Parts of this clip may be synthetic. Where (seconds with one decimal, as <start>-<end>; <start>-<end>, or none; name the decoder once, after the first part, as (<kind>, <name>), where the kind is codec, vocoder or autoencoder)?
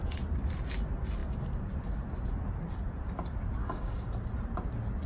3.6-4.1 (codec, DAC)